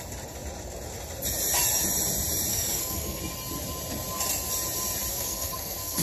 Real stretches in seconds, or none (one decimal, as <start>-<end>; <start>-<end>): 0.0-2.5; 3.2-5.1